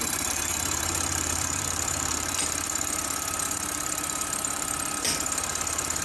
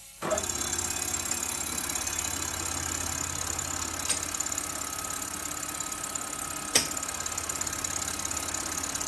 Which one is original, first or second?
second